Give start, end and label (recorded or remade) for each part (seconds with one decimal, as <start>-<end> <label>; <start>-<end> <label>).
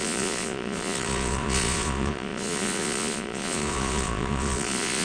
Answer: 0.0-5.0 remade